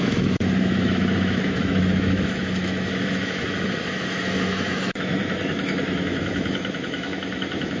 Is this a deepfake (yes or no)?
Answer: yes